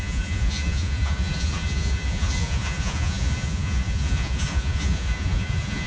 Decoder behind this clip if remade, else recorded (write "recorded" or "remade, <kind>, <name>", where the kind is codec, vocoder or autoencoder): remade, vocoder, Vocos